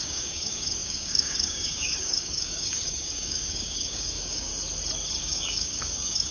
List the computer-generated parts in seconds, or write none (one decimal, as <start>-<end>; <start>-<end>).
0.0-4.5; 5.2-6.3